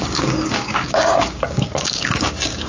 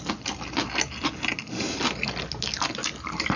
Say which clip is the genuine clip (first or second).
second